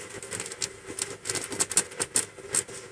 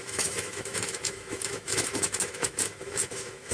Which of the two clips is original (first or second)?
first